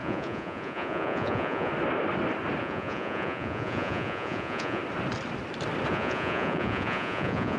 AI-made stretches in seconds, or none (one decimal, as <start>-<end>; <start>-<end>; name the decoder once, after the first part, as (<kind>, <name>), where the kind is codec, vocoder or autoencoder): 0.0-1.7 (vocoder, Vocos); 2.6-4.8; 5.9-7.6